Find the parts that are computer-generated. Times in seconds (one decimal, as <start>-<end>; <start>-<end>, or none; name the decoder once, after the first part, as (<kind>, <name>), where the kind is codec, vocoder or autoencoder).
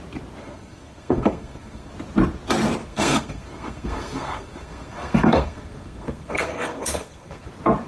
0.4-1.9 (codec, SNAC); 2.8-7.5